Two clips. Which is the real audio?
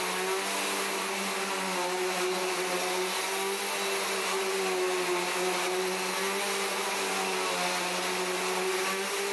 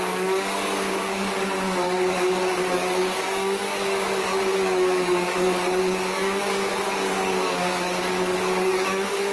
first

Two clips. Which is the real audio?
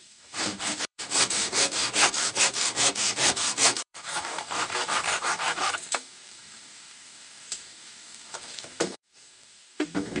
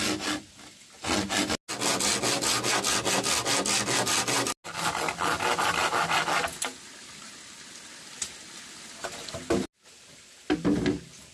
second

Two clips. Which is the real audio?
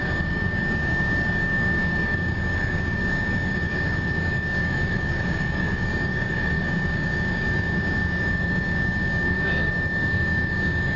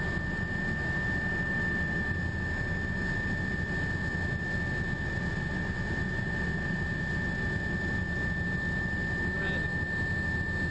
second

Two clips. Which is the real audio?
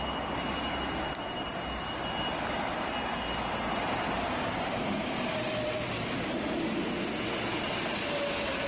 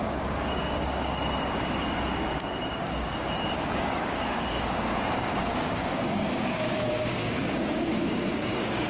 first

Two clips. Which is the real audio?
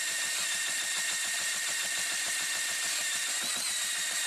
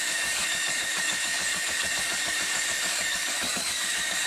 first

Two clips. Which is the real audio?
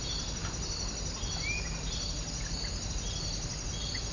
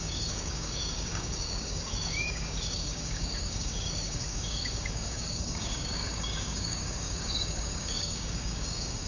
first